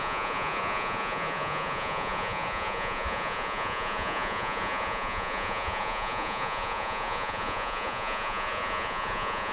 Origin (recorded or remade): remade